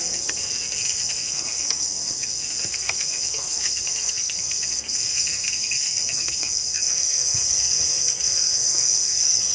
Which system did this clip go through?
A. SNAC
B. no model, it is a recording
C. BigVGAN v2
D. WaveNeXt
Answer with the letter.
A